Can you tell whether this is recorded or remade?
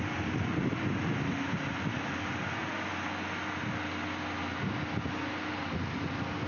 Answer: recorded